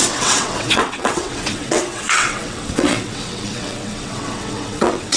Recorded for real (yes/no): no